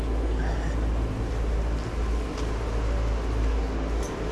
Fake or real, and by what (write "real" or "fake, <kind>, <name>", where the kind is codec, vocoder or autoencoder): real